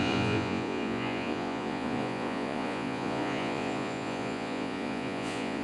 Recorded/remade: remade